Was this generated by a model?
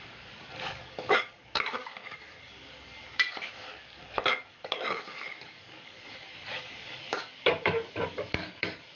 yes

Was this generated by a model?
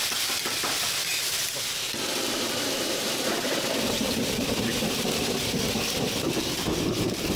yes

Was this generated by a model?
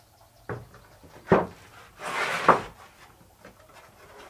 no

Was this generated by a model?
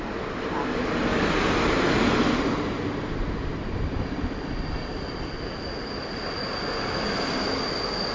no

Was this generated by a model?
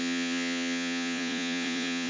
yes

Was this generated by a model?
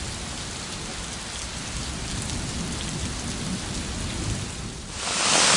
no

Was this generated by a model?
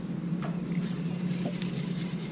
no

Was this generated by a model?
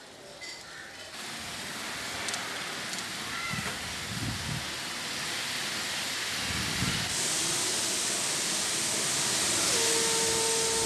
no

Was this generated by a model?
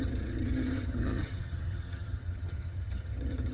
yes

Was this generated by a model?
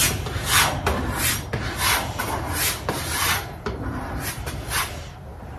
no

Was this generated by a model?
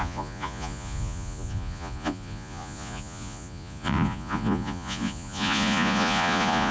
yes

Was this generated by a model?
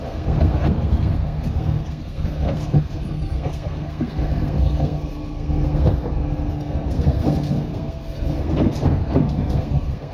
yes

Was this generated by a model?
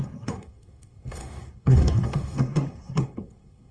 yes